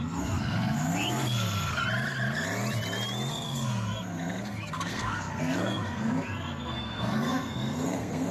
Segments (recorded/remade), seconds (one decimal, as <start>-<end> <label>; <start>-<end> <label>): 0.0-1.8 remade; 1.8-3.3 recorded; 3.3-8.3 remade